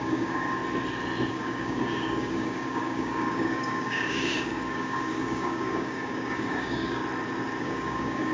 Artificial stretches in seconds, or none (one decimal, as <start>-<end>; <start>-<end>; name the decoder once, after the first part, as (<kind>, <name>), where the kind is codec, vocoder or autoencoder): 0.0-0.6 (codec, DAC); 1.3-7.0; 7.6-8.3